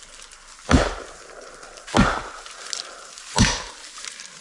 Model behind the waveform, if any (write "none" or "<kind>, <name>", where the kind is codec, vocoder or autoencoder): none